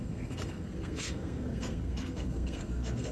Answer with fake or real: fake